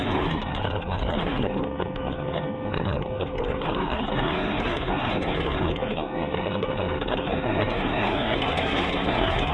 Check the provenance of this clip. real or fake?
fake